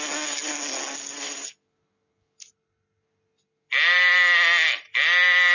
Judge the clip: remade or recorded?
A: recorded